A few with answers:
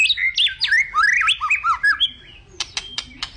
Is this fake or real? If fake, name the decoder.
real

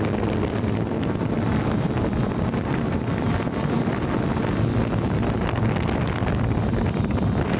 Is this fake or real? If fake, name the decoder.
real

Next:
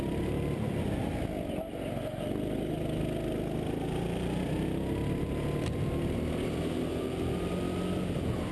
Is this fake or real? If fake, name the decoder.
real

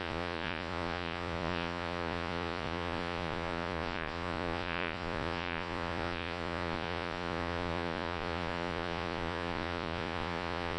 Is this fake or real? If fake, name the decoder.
fake, vocoder, Vocos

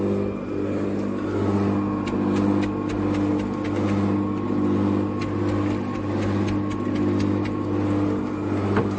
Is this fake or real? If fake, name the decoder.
real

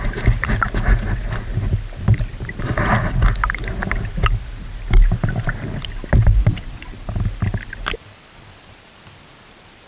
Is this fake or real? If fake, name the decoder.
real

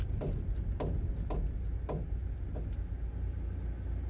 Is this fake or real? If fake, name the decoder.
real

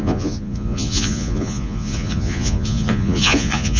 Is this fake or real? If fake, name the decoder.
fake, vocoder, Vocos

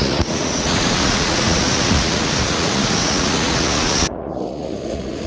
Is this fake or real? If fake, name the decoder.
fake, vocoder, Vocos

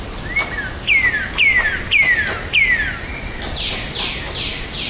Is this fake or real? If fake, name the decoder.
real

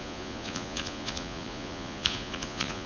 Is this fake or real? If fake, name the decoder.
fake, vocoder, Vocos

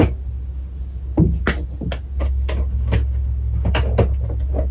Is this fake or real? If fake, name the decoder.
real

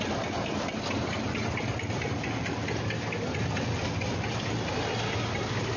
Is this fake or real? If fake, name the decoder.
real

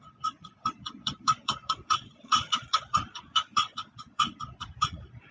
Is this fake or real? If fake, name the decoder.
fake, vocoder, Vocos